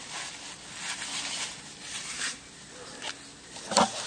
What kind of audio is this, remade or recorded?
recorded